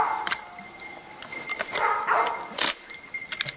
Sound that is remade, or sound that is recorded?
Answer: recorded